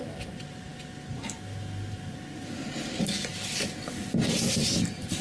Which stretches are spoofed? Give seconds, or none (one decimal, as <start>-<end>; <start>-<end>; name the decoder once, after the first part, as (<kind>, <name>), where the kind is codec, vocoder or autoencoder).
none